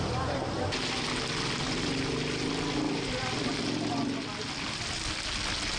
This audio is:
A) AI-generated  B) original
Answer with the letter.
B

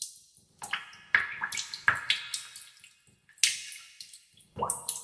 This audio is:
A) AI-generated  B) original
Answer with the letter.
B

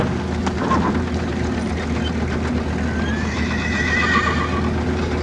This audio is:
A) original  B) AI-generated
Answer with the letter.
A